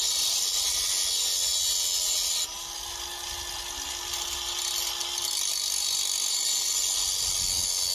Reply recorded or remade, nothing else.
recorded